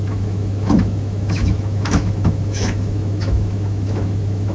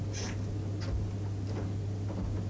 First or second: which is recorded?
second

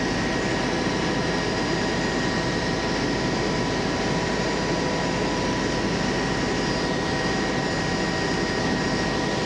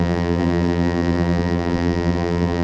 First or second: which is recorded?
first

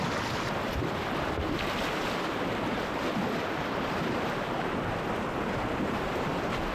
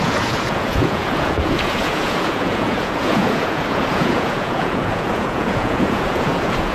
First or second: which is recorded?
first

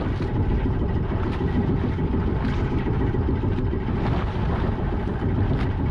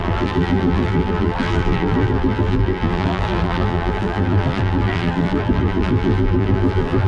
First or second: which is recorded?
first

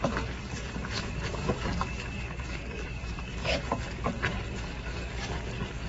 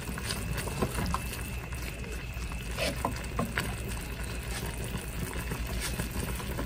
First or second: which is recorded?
second